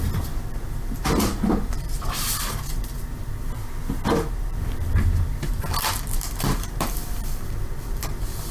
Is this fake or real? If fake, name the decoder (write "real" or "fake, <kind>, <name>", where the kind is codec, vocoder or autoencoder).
fake, vocoder, BigVGAN v2